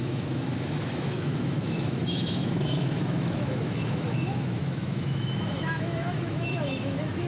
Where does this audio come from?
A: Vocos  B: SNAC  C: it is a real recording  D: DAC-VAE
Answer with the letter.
D